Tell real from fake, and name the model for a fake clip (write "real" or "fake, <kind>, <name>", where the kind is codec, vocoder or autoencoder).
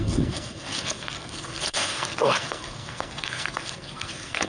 fake, codec, SNAC